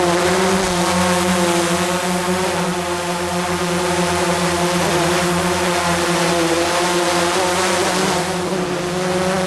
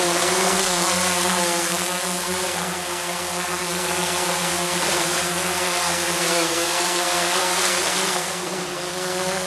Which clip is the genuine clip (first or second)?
first